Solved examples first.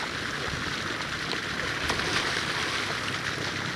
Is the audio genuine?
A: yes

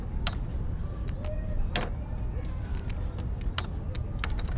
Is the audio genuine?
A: yes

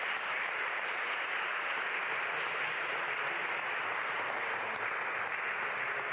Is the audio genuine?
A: yes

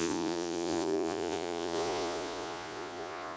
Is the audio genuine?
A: no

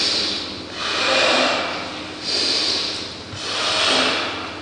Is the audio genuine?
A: yes